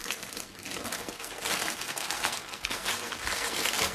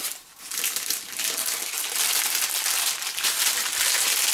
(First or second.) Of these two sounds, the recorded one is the second